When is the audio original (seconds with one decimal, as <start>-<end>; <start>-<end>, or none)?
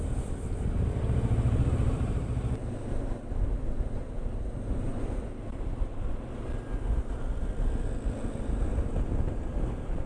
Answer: 0.0-10.1